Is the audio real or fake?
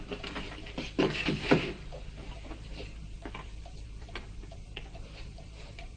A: fake